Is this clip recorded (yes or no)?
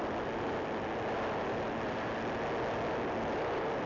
yes